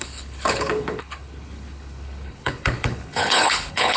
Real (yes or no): no